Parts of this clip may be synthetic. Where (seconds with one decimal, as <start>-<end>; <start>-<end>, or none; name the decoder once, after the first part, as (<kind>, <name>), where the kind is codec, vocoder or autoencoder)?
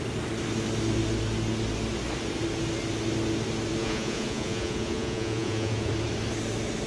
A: 3.8-5.9 (vocoder, Vocos)